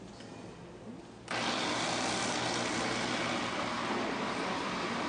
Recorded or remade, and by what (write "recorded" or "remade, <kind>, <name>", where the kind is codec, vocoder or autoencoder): recorded